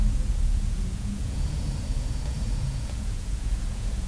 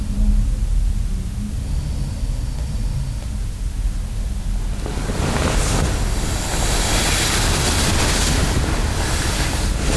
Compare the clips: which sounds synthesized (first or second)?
first